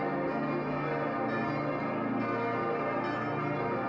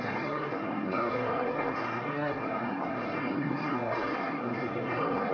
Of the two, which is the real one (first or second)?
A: first